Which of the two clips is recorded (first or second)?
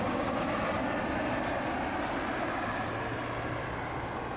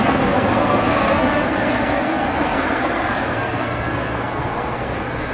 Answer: first